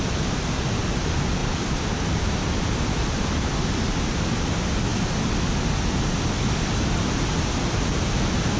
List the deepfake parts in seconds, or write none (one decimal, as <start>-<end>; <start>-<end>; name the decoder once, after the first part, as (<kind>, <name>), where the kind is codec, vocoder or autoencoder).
1.4-2.8 (vocoder, BigVGAN v2)